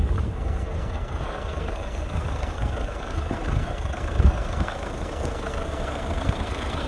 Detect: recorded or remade remade